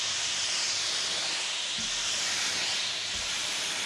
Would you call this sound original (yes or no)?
no